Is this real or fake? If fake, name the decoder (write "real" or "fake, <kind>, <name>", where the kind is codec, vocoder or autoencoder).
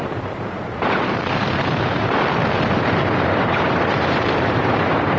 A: fake, vocoder, BigVGAN v2